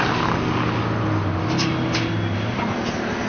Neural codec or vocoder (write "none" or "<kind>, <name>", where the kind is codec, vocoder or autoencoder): none